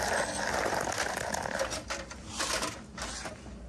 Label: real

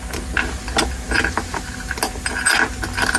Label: real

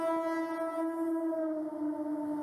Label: real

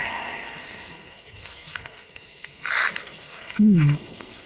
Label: fake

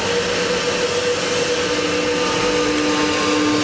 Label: real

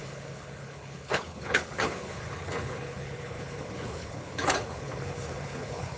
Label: fake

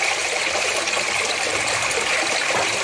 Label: real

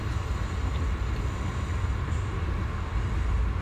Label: real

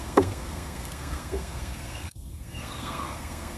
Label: fake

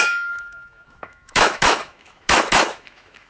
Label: fake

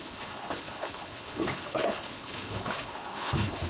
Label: fake